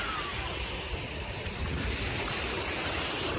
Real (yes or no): yes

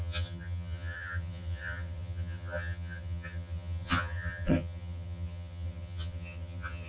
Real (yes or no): no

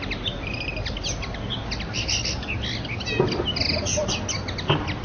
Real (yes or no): yes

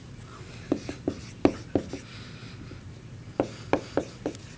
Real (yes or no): yes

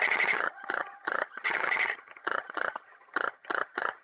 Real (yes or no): no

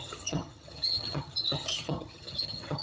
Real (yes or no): no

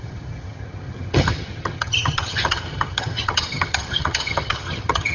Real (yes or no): no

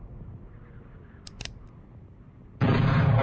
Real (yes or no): yes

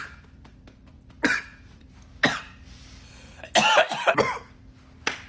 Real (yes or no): yes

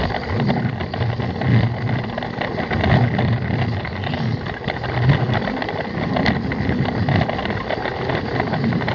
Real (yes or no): yes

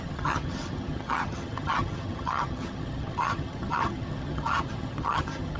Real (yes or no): no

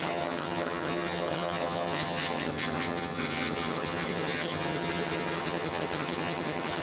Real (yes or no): no